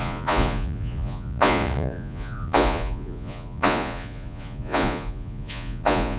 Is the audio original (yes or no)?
no